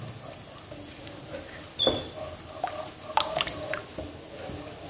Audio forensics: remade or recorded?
recorded